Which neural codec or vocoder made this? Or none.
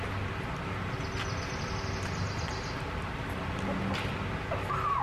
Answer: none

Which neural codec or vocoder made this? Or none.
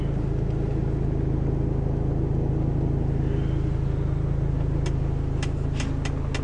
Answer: none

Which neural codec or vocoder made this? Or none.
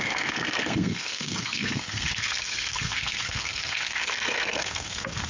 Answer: codec, SNAC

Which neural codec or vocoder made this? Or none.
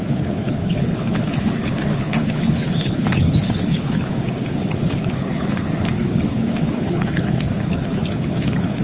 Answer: codec, HILCodec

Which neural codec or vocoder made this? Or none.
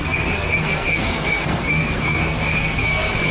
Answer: codec, SNAC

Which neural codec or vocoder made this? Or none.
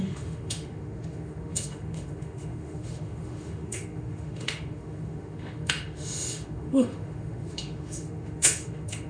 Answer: autoencoder, DAC-VAE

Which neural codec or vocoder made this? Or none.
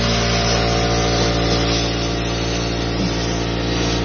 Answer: none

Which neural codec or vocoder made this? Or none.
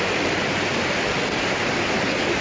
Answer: none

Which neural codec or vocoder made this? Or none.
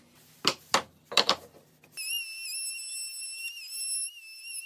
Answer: none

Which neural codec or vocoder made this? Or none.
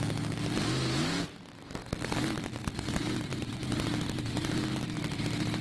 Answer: none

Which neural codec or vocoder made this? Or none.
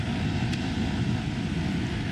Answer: none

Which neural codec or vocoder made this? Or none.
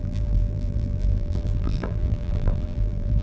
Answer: vocoder, BigVGAN v2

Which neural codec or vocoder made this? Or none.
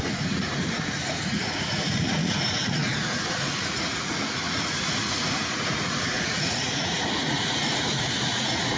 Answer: vocoder, Vocos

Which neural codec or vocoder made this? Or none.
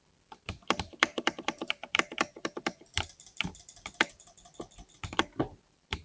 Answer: vocoder, BigVGAN v2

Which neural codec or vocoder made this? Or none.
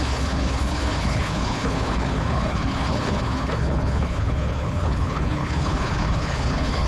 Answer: codec, HILCodec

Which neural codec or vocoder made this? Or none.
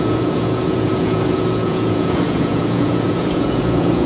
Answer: vocoder, Vocos